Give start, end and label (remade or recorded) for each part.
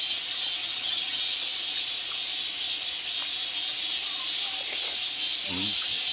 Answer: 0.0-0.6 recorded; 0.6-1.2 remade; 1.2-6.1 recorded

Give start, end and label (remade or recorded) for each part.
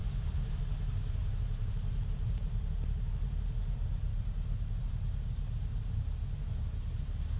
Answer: 0.0-0.6 remade; 0.6-1.2 recorded; 1.2-4.9 remade; 4.9-7.4 recorded